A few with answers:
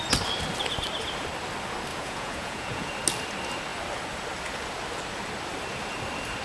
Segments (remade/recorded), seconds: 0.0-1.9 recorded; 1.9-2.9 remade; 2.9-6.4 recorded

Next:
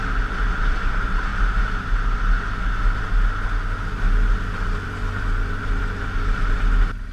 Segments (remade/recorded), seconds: 0.0-7.1 recorded

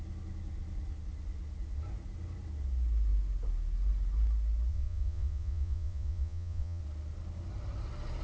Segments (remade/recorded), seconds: 0.0-4.7 recorded; 4.7-6.8 remade; 6.8-8.2 recorded